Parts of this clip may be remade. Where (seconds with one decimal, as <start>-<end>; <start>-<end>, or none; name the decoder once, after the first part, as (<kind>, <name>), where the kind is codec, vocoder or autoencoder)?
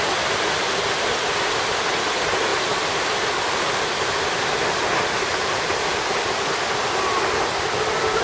none